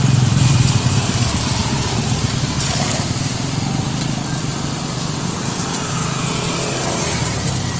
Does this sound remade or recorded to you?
recorded